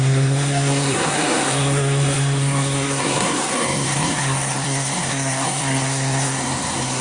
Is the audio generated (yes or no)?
yes